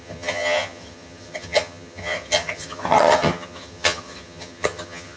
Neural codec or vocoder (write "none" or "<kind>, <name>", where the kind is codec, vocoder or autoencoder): vocoder, HiFi-GAN